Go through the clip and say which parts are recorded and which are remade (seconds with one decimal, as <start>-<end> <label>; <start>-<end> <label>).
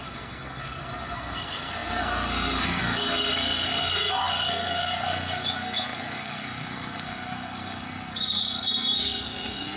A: 0.0-9.8 remade